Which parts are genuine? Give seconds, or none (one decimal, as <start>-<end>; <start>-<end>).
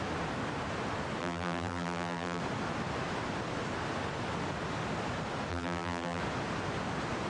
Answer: 0.0-1.2; 2.4-5.5; 6.2-7.3